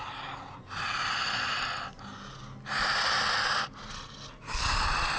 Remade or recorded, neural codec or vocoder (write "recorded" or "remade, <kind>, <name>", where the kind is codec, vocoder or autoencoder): recorded